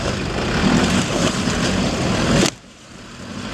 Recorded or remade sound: recorded